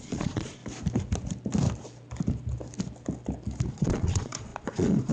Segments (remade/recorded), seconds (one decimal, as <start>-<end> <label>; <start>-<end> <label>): 0.0-0.6 remade; 0.6-3.7 recorded; 3.7-5.1 remade